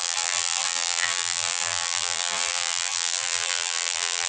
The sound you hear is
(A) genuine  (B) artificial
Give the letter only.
B